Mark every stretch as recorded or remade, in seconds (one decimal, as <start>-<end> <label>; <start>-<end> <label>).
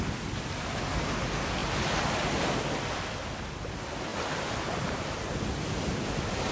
0.0-6.5 recorded